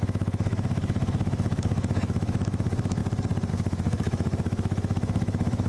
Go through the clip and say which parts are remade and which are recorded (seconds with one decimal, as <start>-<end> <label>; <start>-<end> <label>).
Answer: 0.0-3.0 remade; 3.0-3.5 recorded; 3.5-5.7 remade